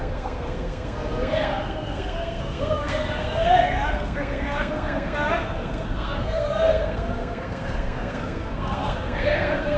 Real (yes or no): no